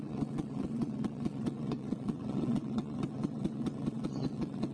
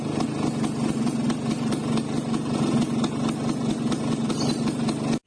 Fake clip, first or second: first